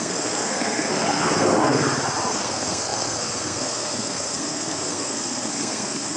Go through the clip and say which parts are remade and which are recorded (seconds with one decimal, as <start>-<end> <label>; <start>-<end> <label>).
0.0-1.8 remade; 1.8-2.3 recorded; 2.3-6.2 remade